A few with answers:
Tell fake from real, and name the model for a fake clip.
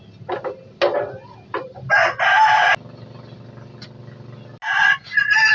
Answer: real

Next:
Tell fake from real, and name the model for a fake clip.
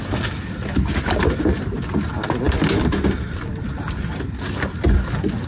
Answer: real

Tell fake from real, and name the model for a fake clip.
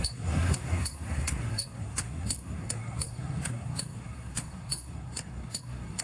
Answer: fake, codec, SNAC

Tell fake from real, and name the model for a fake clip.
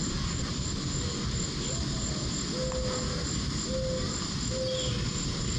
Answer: real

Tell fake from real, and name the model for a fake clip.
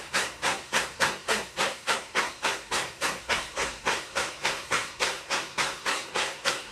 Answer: fake, codec, SNAC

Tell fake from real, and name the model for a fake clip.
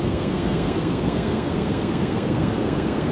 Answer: fake, codec, SNAC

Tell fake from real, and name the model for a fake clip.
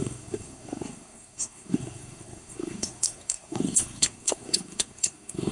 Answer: fake, codec, SNAC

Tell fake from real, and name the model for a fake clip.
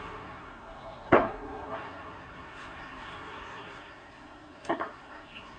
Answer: fake, codec, SNAC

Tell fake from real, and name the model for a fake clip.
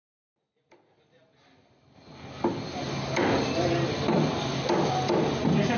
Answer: real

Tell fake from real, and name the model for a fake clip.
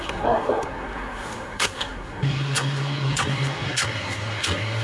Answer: fake, codec, SNAC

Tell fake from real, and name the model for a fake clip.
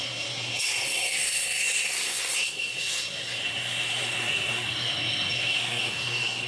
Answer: fake, codec, SNAC